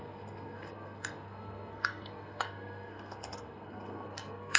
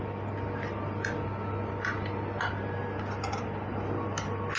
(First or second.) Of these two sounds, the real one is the second